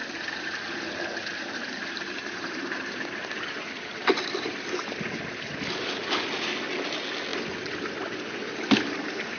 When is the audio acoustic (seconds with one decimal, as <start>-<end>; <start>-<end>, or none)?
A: 2.5-9.4